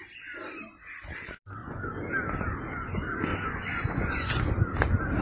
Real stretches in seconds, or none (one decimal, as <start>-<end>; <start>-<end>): 0.0-1.6; 2.1-3.3; 4.3-5.2